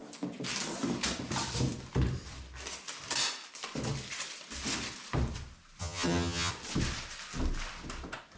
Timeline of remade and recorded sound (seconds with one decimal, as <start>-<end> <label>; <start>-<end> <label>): 0.0-5.8 recorded; 5.8-6.5 remade; 6.5-8.4 recorded